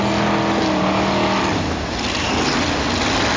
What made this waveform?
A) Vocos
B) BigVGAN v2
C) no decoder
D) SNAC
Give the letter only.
C